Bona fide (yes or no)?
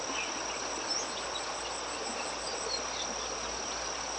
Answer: yes